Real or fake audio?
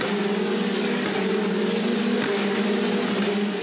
real